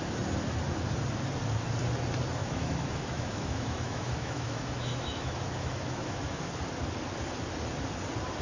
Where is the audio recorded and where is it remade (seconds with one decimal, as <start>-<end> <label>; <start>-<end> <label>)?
0.0-2.4 recorded; 2.4-6.5 remade; 6.5-8.4 recorded